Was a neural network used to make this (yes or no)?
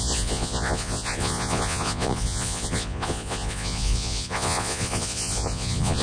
yes